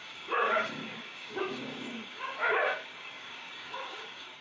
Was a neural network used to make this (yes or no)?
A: yes